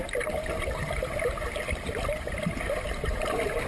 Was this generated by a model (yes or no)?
no